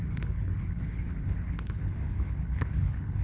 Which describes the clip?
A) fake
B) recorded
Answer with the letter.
A